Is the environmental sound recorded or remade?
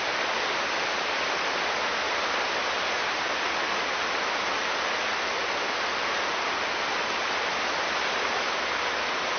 recorded